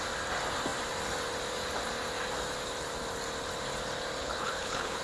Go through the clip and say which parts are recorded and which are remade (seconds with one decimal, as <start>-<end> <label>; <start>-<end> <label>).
0.0-4.2 recorded; 4.2-5.0 remade